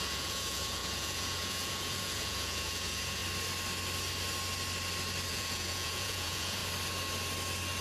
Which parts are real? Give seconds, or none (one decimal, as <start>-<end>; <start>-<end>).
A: 3.2-5.3; 6.6-7.8